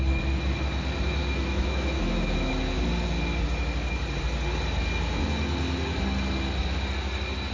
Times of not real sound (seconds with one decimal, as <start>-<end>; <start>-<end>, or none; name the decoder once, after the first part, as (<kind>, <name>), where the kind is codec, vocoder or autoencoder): 1.2-2.5 (autoencoder, DAC-VAE)